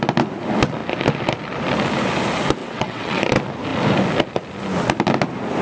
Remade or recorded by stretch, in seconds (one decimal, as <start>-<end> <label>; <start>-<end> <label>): 0.0-2.6 recorded; 2.6-3.2 remade; 3.2-5.6 recorded